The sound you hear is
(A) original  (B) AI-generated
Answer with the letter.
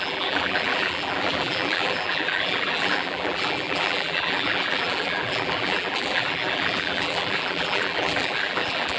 B